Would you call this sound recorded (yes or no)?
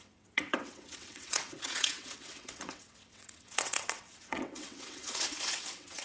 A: no